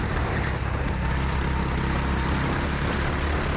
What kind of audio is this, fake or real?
real